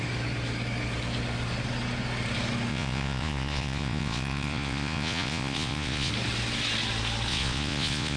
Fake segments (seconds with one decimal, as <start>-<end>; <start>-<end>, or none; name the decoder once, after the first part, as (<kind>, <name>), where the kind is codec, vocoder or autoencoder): 2.7-6.1 (vocoder, Vocos); 7.3-8.2